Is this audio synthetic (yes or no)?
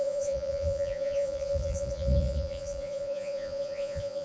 yes